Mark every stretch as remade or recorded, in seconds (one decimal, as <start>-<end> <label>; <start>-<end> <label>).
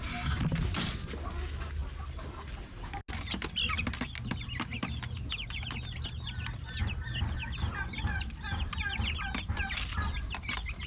0.0-10.9 recorded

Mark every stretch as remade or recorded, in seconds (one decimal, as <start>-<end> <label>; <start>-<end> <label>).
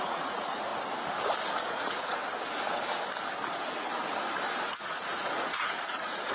0.0-0.7 remade; 0.7-1.7 recorded; 1.7-2.2 remade; 2.2-4.7 recorded; 4.7-6.3 remade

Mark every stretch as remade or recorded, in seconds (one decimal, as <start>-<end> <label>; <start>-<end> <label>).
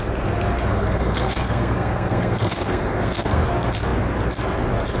0.0-0.7 recorded; 0.7-3.4 remade; 3.4-5.0 recorded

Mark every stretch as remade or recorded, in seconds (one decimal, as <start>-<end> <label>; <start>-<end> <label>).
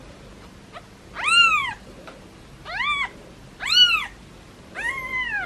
0.0-1.6 recorded; 1.6-2.6 remade; 2.6-5.5 recorded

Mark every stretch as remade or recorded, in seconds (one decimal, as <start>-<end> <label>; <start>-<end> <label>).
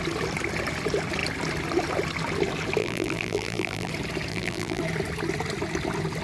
0.0-2.8 recorded; 2.8-3.9 remade; 3.9-4.3 recorded; 4.3-4.8 remade; 4.8-6.2 recorded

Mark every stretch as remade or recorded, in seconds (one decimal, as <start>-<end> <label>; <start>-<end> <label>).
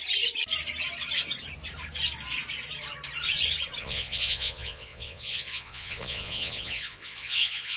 0.0-3.8 recorded; 3.8-7.8 remade